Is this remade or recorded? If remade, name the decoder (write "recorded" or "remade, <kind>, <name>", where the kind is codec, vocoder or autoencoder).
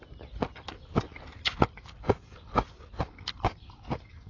recorded